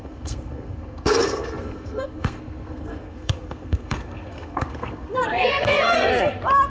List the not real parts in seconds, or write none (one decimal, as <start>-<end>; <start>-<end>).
0.0-6.1